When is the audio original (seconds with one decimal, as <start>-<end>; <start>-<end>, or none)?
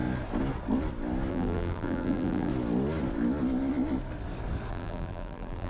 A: 0.0-1.3; 2.5-4.7